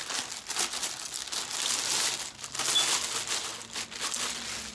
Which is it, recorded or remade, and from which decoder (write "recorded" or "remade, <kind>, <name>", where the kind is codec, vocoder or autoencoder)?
recorded